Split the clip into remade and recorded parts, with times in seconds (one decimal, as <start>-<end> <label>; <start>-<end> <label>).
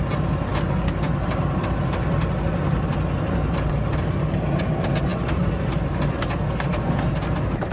0.0-7.7 recorded